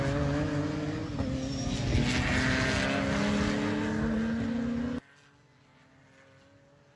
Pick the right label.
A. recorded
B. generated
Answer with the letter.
A